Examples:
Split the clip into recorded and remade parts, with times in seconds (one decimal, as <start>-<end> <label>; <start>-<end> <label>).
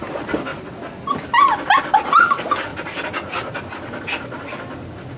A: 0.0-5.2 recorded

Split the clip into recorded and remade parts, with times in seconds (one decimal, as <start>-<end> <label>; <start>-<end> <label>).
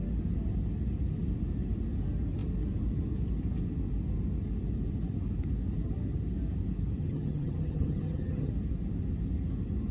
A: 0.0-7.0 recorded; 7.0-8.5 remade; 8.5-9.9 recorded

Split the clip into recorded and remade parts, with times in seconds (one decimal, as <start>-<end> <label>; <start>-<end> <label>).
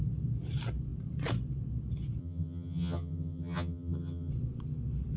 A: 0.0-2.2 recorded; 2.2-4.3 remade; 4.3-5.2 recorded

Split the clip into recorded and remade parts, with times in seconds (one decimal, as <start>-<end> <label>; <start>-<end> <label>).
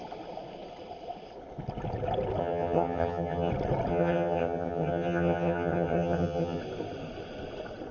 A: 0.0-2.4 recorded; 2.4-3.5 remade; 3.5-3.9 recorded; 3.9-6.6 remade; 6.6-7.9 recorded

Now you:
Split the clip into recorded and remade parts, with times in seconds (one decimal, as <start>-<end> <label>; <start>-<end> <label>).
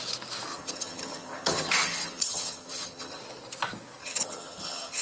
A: 0.0-0.5 recorded; 0.5-3.2 remade; 3.2-4.0 recorded; 4.0-5.0 remade